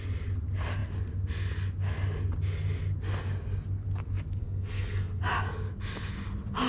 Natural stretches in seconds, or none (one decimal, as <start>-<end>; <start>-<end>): 0.0-4.4; 5.2-6.7